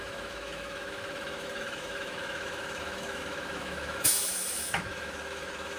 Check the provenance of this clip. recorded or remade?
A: remade